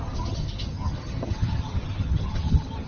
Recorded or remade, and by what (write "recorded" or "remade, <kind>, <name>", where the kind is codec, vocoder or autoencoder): remade, vocoder, HiFi-GAN